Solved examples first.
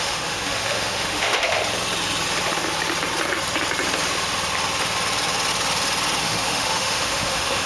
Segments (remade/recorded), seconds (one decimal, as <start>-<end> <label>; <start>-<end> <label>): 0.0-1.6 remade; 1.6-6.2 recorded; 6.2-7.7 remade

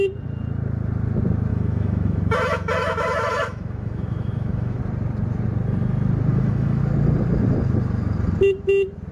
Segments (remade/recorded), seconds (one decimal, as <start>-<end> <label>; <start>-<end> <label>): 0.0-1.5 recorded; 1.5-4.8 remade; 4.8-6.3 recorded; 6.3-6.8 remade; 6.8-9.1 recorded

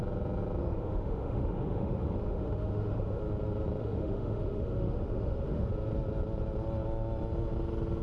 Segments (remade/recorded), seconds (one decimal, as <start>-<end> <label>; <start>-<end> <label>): 0.0-0.6 recorded; 0.6-3.2 remade; 3.2-3.8 recorded; 3.8-5.7 remade; 5.7-8.0 recorded

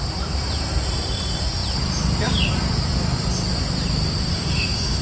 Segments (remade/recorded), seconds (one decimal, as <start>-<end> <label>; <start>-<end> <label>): 0.0-4.3 recorded; 4.3-5.0 remade

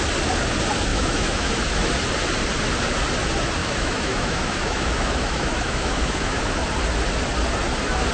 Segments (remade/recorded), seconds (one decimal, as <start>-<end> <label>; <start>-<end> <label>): 0.0-0.9 recorded; 0.9-1.5 remade; 1.5-3.6 recorded; 3.6-6.4 remade; 6.4-8.1 recorded

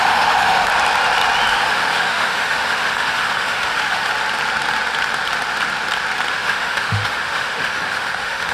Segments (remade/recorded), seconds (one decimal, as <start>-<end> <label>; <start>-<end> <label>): 0.0-0.7 remade; 0.7-1.5 recorded; 1.5-4.1 remade; 4.1-6.3 recorded; 6.3-8.5 remade

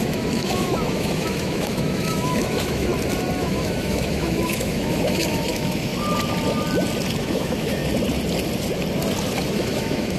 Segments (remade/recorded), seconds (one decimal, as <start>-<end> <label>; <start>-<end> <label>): 0.0-2.9 remade; 2.9-3.4 recorded; 3.4-5.9 remade; 5.9-7.2 recorded; 7.2-7.8 remade; 7.8-9.5 recorded; 9.5-10.2 remade

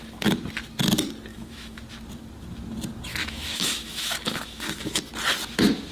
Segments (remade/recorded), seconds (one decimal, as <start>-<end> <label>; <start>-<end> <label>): 0.0-1.3 recorded; 1.3-1.8 remade; 1.8-3.1 recorded; 3.1-5.0 remade; 5.0-5.9 recorded